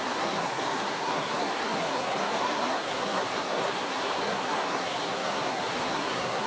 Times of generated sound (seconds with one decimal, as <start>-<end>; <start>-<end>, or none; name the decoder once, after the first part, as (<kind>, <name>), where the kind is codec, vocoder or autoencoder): 0.0-6.5 (codec, SNAC)